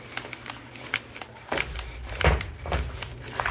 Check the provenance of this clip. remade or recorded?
recorded